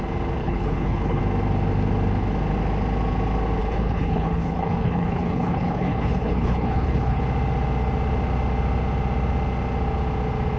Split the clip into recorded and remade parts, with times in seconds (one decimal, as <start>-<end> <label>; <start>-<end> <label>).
0.0-0.4 recorded; 0.4-1.2 remade; 1.2-3.6 recorded; 3.6-7.2 remade; 7.2-10.6 recorded